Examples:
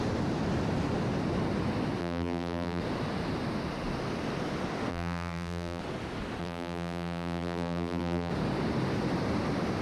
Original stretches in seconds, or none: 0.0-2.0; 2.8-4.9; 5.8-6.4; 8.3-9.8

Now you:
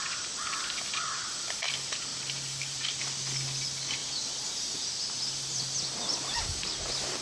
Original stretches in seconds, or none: 0.0-2.1; 3.0-4.0; 5.6-7.2

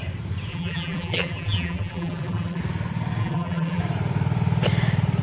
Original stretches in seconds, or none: 0.0-0.5; 2.6-3.2; 3.8-5.2

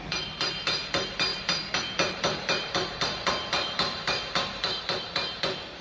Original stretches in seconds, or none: none

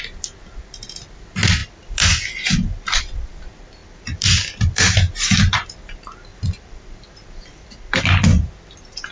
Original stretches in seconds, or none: 0.0-1.6; 3.0-3.8; 5.1-6.3; 8.0-9.1

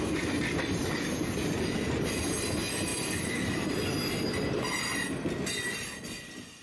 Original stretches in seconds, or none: 0.0-0.8; 2.2-2.9; 3.7-6.6